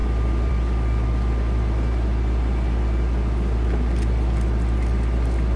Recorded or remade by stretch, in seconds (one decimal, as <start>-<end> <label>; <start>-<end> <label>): 0.0-5.6 recorded